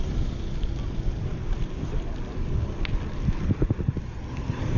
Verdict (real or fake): real